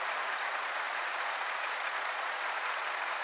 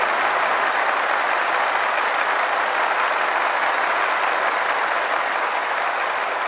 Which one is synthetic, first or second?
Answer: first